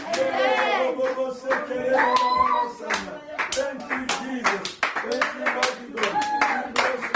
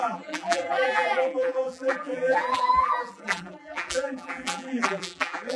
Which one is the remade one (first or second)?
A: second